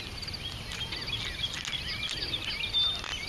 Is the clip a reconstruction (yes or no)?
no